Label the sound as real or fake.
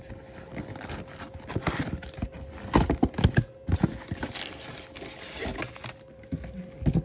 real